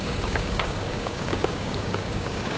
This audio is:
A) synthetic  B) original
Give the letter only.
A